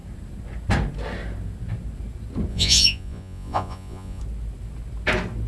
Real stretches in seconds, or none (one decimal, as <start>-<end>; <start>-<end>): 0.0-2.5; 4.2-5.5